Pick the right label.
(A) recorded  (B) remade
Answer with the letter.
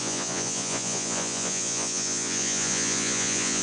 B